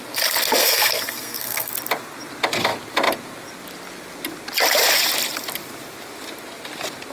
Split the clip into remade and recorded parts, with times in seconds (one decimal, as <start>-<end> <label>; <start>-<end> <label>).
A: 0.0-0.6 recorded; 0.6-1.7 remade; 1.7-7.1 recorded